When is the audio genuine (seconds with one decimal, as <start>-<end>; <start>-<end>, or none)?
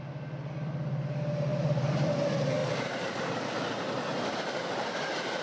0.0-1.5; 2.1-2.6